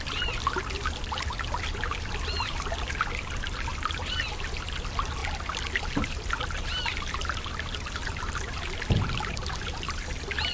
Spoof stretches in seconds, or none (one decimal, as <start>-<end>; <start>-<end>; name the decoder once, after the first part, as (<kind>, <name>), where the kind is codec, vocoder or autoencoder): none